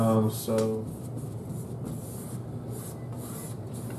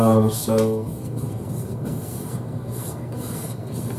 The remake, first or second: second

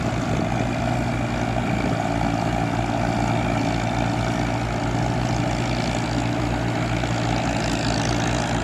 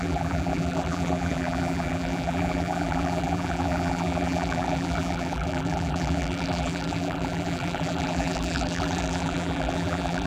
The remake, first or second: second